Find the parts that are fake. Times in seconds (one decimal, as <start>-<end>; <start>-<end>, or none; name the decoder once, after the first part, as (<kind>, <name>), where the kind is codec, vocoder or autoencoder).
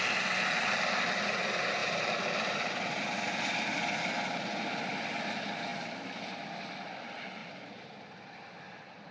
1.8-3.6 (vocoder, BigVGAN v2); 7.4-8.5